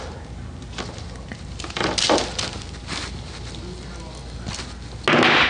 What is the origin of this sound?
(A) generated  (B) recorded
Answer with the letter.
B